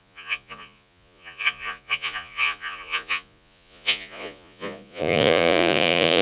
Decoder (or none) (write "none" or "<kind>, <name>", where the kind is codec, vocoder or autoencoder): vocoder, Vocos